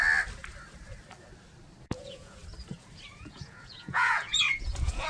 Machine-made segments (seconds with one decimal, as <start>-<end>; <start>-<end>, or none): 1.8-2.4; 3.2-5.1